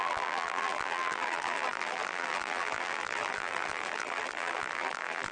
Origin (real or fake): fake